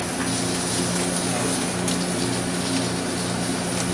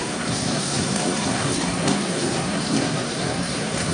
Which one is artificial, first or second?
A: second